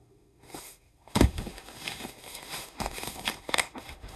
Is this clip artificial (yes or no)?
yes